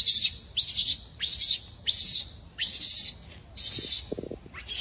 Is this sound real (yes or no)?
yes